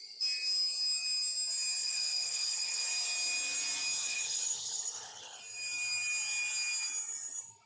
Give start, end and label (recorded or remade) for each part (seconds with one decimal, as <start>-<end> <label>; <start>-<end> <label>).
0.0-1.8 recorded; 1.8-2.8 remade; 2.8-4.0 recorded; 4.0-5.4 remade; 5.4-7.7 recorded

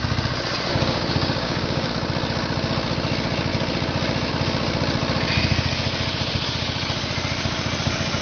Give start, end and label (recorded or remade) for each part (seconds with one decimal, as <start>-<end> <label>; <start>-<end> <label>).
0.0-0.7 recorded; 0.7-1.9 remade; 1.9-8.2 recorded

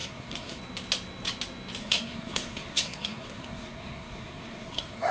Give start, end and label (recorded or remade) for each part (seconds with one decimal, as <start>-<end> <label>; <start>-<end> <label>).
0.0-0.6 remade; 0.6-1.8 recorded; 1.8-5.1 remade

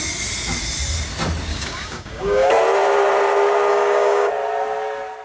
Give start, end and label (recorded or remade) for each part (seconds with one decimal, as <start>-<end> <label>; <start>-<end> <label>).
0.0-1.5 recorded; 1.5-2.5 remade; 2.5-3.7 recorded; 3.7-4.3 remade; 4.3-5.2 recorded

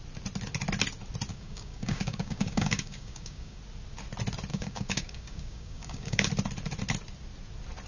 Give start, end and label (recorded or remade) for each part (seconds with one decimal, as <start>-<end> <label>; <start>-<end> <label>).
0.0-1.3 recorded; 1.3-3.6 remade; 3.6-4.5 recorded; 4.5-6.3 remade; 6.3-7.9 recorded

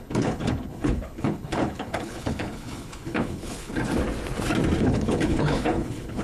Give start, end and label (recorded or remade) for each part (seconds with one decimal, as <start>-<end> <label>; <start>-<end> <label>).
0.0-3.7 remade; 3.7-4.8 recorded; 4.8-6.2 remade

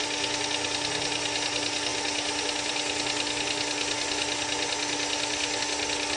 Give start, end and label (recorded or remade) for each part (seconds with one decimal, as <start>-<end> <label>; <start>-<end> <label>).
0.0-6.2 recorded

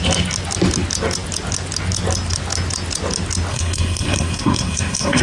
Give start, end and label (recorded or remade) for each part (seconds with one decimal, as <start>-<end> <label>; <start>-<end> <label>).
0.0-3.5 recorded; 3.5-5.2 remade